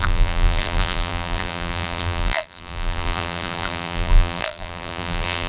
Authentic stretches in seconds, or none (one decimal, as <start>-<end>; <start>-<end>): none